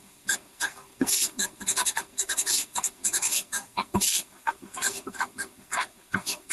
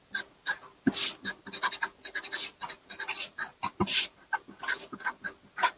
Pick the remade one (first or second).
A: first